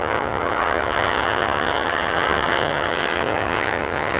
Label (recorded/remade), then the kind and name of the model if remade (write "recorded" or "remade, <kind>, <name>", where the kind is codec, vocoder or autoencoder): remade, vocoder, HiFi-GAN